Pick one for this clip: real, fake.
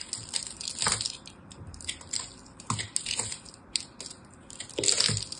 real